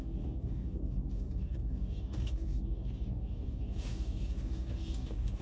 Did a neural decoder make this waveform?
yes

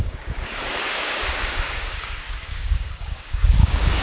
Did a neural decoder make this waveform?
yes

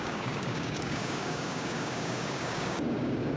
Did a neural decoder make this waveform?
yes